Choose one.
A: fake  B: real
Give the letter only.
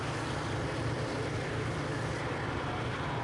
A